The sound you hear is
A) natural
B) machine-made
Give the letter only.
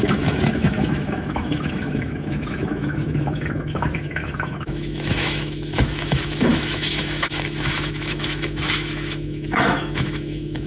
B